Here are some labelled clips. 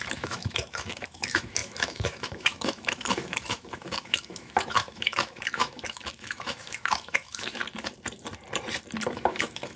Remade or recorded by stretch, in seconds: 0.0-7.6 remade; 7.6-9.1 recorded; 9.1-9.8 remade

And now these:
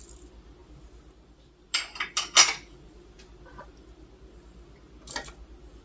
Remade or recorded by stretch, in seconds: 0.0-5.8 recorded

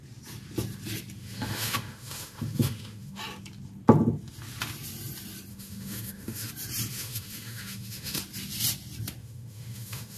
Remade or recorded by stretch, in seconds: 0.0-1.2 recorded; 1.2-3.2 remade; 3.2-5.5 recorded; 5.5-6.5 remade; 6.5-6.9 recorded; 6.9-8.2 remade; 8.2-9.2 recorded; 9.2-10.2 remade

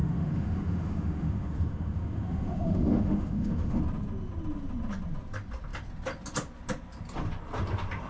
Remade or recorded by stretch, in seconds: 0.0-3.8 remade; 3.8-8.1 recorded

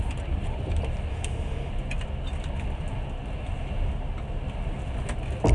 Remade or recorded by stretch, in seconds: 0.0-1.1 recorded; 1.1-1.7 remade; 1.7-5.5 recorded